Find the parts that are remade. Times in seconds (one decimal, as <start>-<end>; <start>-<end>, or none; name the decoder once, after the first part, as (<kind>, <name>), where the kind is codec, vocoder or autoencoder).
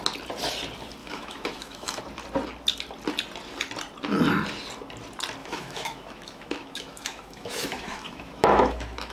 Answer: 1.0-2.0 (autoencoder, DAC-VAE); 5.4-9.1